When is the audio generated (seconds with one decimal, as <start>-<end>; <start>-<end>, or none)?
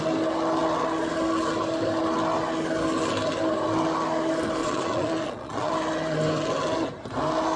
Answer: 4.6-5.7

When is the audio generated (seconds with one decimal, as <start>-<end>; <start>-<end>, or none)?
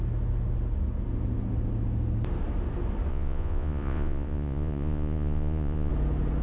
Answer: 3.1-5.9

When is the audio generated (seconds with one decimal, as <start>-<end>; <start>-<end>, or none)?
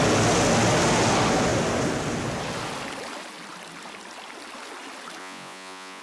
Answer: 5.2-6.0